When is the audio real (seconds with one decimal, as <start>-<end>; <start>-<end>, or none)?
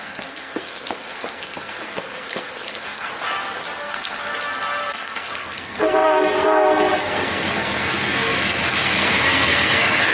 3.1-3.8; 4.3-4.9